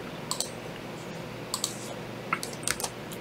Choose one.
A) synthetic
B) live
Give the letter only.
B